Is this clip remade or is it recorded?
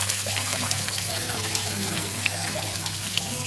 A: remade